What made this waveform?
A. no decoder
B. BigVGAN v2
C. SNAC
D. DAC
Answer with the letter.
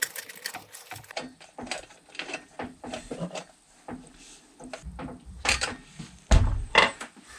B